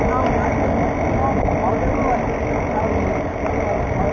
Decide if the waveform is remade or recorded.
recorded